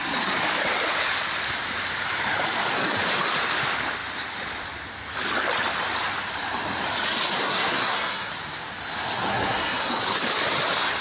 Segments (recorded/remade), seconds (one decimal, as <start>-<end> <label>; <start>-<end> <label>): 0.0-7.4 recorded; 7.4-8.3 remade; 8.3-9.3 recorded; 9.3-9.9 remade; 9.9-11.0 recorded